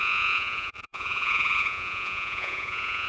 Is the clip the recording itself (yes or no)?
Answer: no